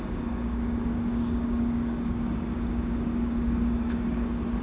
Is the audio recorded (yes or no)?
no